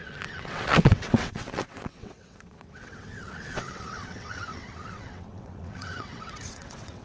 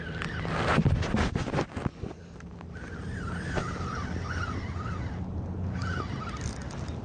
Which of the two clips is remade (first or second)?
first